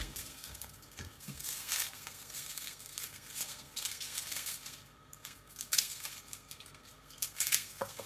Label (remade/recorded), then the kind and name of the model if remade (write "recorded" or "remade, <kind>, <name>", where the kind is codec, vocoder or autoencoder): remade, codec, SNAC